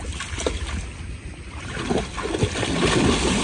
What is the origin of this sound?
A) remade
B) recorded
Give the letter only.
B